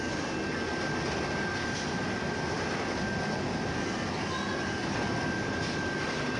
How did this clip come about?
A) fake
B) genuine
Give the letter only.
B